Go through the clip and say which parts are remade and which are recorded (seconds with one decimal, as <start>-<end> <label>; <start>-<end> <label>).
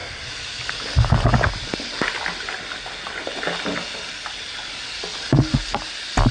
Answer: 0.0-6.3 recorded